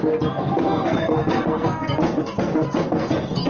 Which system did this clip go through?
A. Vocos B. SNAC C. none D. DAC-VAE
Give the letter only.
B